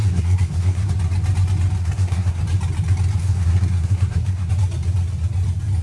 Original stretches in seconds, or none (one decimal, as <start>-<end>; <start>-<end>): 0.9-1.8; 2.4-3.2; 4.5-5.8